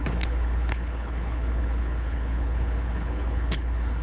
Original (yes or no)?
no